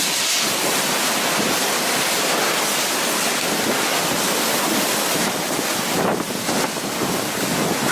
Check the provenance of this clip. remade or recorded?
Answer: recorded